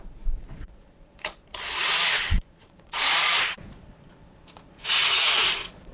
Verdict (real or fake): fake